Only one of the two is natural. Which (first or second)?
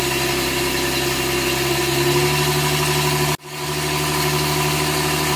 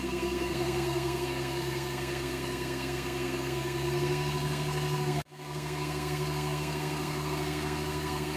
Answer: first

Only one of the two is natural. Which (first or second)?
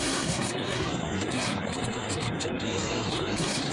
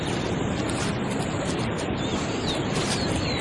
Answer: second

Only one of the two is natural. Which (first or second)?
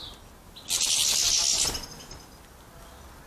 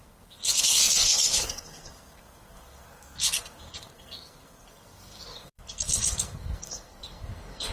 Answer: first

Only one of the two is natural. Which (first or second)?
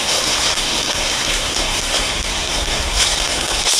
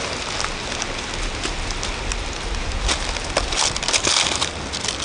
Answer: second